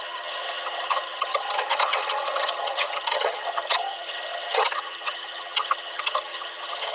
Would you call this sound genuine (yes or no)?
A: no